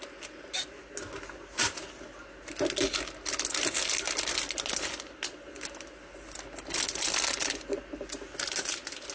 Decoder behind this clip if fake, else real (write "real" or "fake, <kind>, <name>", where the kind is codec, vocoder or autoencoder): real